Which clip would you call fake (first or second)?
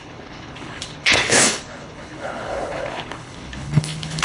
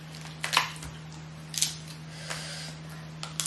first